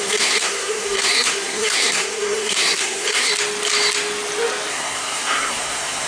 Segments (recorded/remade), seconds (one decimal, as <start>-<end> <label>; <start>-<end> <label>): 0.0-3.3 remade; 3.3-4.7 recorded; 4.7-6.1 remade